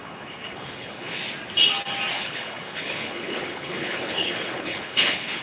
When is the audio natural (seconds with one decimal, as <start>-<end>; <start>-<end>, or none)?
1.2-2.1

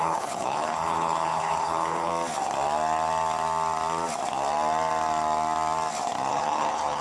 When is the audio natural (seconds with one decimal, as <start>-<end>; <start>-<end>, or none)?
2.1-6.3